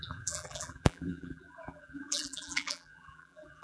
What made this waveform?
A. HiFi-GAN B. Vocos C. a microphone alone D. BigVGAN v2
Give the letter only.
D